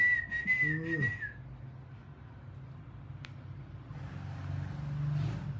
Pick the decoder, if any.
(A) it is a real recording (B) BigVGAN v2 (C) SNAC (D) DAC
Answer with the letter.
A